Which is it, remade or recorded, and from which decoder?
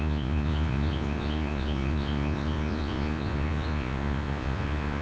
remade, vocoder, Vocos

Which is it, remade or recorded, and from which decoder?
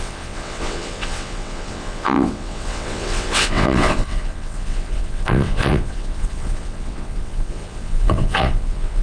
remade, vocoder, WaveNeXt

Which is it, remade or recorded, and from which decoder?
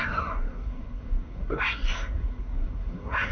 remade, codec, SNAC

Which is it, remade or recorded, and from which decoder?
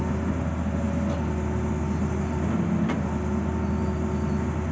recorded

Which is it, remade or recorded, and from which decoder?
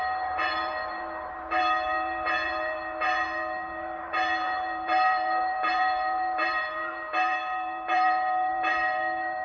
remade, vocoder, BigVGAN v2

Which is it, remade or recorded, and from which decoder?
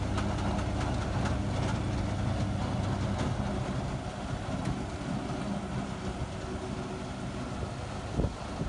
recorded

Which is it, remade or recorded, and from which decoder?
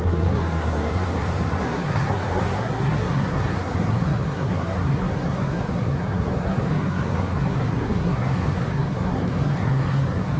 remade, codec, SNAC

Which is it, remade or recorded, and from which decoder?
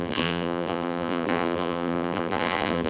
remade, vocoder, BigVGAN v2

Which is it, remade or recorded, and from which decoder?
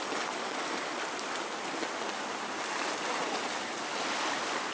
recorded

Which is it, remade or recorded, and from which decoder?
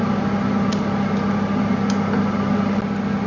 recorded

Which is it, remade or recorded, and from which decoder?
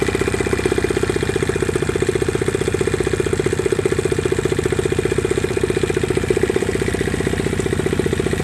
recorded